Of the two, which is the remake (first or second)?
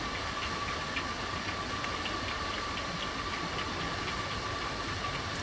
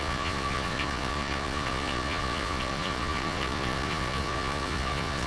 second